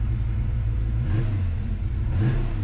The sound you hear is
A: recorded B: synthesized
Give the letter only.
A